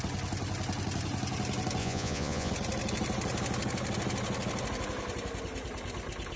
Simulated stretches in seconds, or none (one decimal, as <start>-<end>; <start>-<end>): 1.8-2.5